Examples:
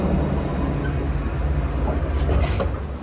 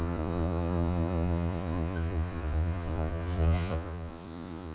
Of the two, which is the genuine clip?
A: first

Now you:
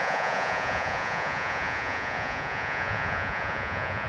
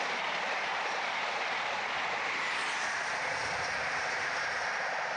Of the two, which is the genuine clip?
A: second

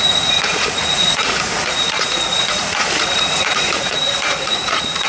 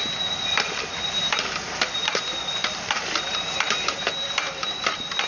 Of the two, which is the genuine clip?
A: second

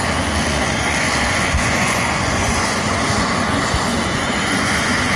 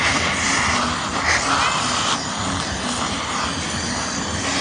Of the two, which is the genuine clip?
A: second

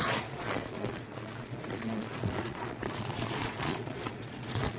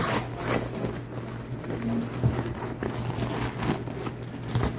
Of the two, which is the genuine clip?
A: second